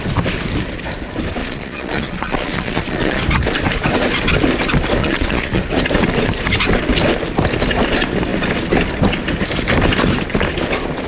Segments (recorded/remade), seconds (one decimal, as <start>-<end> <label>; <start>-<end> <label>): 0.0-1.4 recorded; 1.4-3.2 remade; 3.2-5.0 recorded; 5.0-5.6 remade; 5.6-11.1 recorded